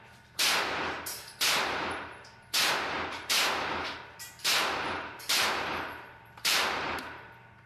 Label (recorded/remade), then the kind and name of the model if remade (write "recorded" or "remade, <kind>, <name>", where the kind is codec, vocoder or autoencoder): remade, vocoder, BigVGAN v2